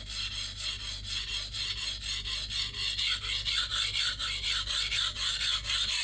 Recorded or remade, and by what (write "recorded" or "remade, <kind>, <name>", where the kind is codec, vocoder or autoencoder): recorded